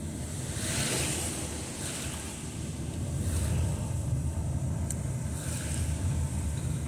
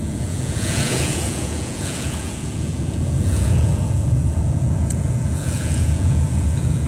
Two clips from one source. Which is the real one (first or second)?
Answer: first